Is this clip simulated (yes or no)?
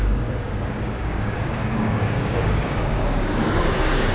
yes